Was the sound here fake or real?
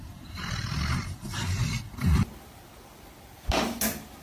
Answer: real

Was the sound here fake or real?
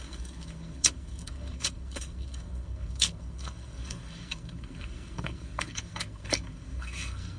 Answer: fake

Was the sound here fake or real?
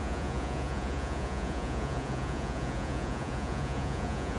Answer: fake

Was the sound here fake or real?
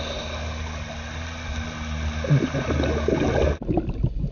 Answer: real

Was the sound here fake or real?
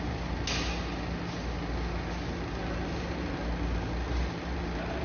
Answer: real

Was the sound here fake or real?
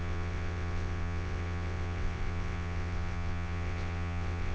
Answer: fake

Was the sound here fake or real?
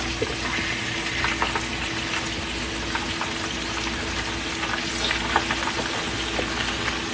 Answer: real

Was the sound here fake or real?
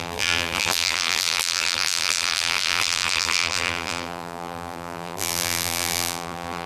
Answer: fake